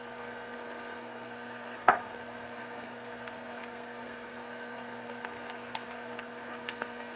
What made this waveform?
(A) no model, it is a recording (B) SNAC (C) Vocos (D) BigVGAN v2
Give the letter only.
B